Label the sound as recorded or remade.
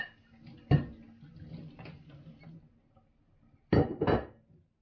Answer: recorded